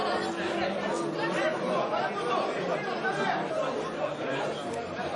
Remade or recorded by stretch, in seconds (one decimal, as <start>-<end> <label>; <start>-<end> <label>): 0.0-5.2 recorded